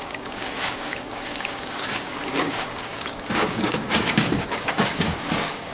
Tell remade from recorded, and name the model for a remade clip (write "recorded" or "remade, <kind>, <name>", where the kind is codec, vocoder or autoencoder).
remade, codec, DAC